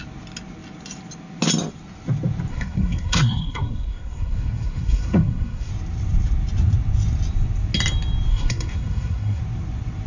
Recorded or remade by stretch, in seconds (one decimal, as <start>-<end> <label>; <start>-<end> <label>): 0.0-2.5 recorded; 2.5-5.7 remade; 5.7-8.3 recorded; 8.3-9.4 remade; 9.4-10.1 recorded